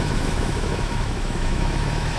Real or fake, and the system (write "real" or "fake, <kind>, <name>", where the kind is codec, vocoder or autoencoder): fake, autoencoder, DAC-VAE